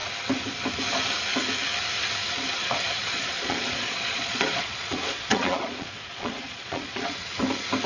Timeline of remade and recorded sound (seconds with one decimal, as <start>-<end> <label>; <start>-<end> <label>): 0.0-2.6 recorded; 2.6-7.3 remade; 7.3-7.9 recorded